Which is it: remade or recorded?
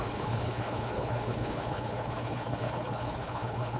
remade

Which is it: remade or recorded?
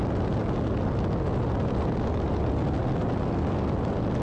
recorded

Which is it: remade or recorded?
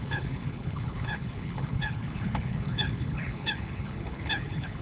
remade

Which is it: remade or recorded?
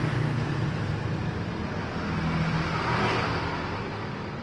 recorded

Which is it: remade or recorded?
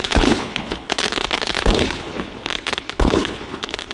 remade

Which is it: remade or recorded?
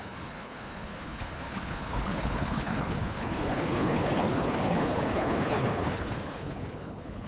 remade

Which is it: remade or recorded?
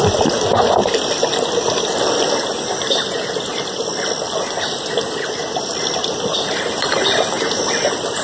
recorded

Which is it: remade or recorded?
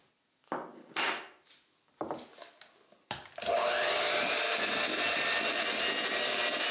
recorded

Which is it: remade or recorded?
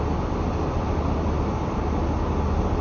recorded